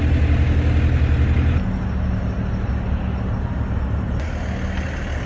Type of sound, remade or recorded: recorded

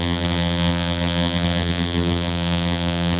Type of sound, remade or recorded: remade